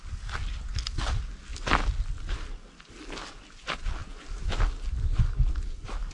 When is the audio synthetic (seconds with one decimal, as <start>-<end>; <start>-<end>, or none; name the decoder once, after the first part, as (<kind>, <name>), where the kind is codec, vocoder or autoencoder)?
none